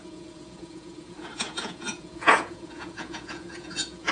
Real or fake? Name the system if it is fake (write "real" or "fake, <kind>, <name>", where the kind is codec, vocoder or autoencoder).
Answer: fake, vocoder, Vocos